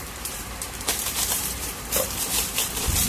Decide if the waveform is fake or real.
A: fake